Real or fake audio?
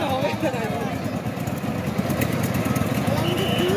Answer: real